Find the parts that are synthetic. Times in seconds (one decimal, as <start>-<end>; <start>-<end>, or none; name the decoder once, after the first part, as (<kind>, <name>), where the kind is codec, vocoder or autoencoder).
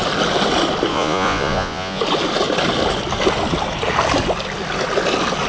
0.9-2.0 (vocoder, Vocos)